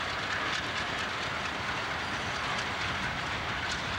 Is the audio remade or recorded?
recorded